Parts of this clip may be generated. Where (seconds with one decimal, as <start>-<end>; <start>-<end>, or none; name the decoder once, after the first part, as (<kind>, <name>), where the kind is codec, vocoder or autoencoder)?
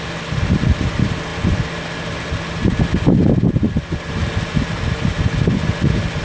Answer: none